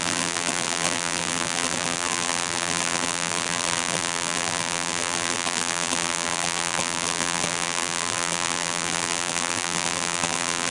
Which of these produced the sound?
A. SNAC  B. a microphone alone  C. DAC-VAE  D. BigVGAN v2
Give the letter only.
D